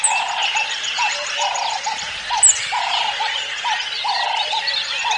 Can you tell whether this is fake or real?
real